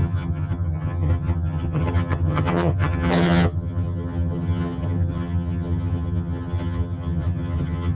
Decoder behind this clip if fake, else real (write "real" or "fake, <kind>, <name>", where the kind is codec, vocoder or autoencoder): fake, vocoder, HiFi-GAN